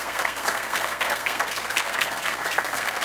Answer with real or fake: fake